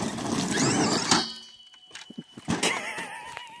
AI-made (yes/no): no